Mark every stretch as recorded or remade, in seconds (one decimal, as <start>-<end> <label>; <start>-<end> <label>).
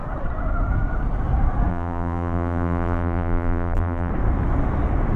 0.0-1.7 recorded; 1.7-4.1 remade; 4.1-5.2 recorded